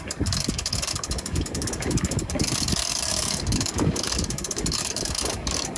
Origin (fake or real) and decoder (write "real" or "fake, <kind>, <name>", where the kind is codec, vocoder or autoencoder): fake, codec, DAC